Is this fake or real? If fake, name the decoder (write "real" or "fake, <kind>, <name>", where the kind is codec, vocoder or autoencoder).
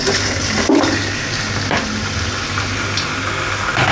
real